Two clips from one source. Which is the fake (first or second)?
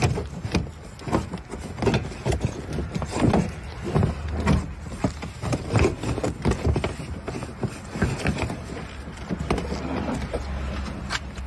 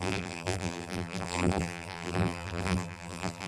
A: second